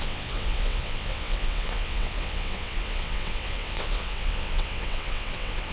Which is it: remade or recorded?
remade